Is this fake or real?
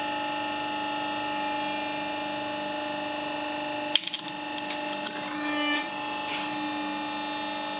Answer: real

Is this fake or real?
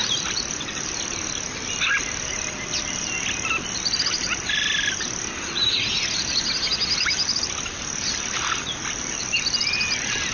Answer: real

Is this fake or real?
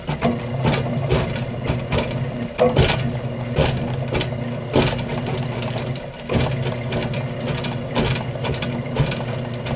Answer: real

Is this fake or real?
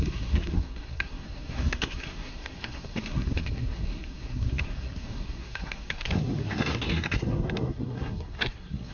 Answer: fake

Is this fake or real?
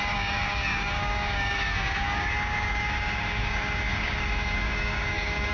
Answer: fake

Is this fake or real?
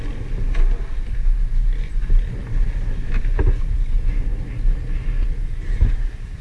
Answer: real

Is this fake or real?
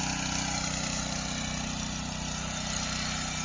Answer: real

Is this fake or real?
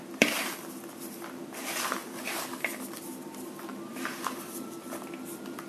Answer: fake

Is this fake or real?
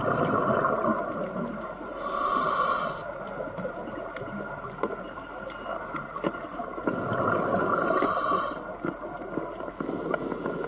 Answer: real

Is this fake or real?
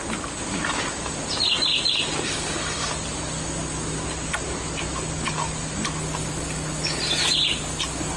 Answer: real